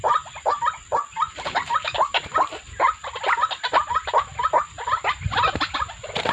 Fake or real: real